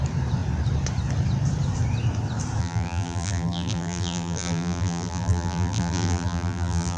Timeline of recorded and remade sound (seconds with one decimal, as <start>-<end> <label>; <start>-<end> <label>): 0.0-2.6 recorded; 2.6-7.0 remade